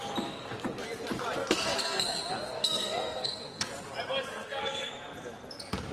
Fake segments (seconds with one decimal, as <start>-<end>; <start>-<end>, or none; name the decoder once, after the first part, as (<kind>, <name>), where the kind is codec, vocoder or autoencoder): 1.4-2.2 (codec, SNAC); 2.6-3.7; 4.3-4.9